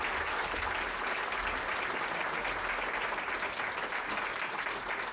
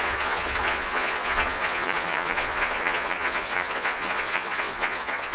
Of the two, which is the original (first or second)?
first